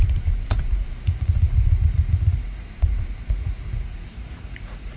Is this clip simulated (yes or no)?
yes